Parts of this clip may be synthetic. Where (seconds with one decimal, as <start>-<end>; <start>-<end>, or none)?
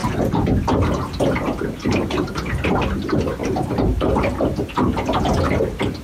1.8-2.5; 3.4-4.7